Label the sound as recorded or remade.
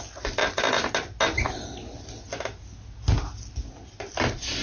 recorded